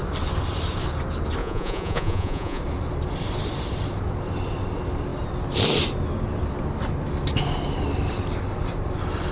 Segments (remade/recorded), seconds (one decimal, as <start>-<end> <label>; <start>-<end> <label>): 0.0-1.4 recorded; 1.4-2.6 remade; 2.6-9.3 recorded